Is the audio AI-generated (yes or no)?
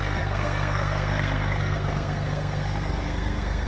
yes